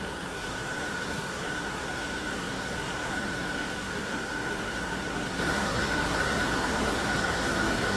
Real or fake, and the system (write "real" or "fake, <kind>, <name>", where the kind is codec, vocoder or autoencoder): fake, codec, SNAC